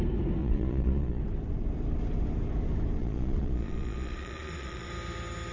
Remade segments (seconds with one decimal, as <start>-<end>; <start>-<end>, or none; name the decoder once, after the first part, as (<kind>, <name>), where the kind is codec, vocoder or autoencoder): 0.4-1.2 (vocoder, Vocos); 3.0-4.9